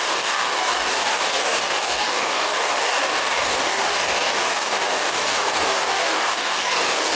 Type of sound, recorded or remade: remade